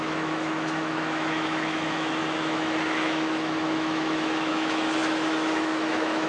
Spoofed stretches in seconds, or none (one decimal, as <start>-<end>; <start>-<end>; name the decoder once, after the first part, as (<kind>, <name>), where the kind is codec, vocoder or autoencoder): 0.0-6.3 (autoencoder, DAC-VAE)